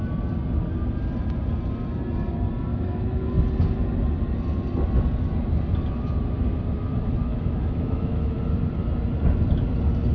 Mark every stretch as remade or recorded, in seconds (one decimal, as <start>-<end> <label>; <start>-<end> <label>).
0.0-2.7 recorded; 2.7-3.3 remade; 3.3-7.3 recorded; 7.3-8.4 remade; 8.4-10.1 recorded

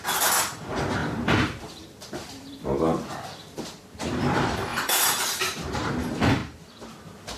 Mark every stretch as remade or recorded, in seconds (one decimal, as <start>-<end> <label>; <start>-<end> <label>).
0.0-1.0 recorded; 1.0-3.6 remade; 3.6-4.7 recorded; 4.7-5.9 remade; 5.9-7.4 recorded

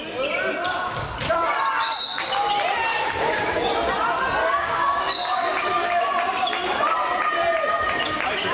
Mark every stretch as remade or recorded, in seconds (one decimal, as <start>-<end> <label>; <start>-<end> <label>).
0.0-2.9 recorded; 2.9-3.7 remade; 3.7-4.4 recorded; 4.4-6.1 remade; 6.1-8.5 recorded

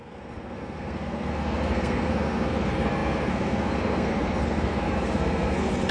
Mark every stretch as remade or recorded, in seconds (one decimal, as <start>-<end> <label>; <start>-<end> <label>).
0.0-5.9 remade

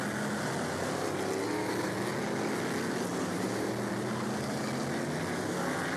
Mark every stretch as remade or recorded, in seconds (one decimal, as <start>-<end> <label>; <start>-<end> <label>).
0.0-3.1 recorded; 3.1-3.7 remade; 3.7-6.0 recorded

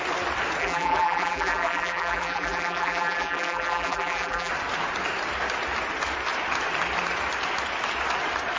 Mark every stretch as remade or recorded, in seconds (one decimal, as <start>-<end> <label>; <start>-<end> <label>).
0.0-0.6 recorded; 0.6-4.5 remade; 4.5-8.6 recorded